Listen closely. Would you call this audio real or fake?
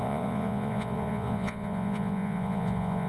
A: fake